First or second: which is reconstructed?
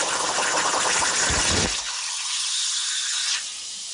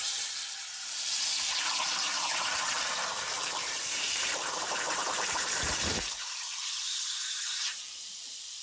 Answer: second